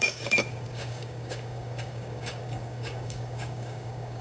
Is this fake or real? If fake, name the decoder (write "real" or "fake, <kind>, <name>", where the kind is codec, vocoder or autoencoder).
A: fake, codec, DAC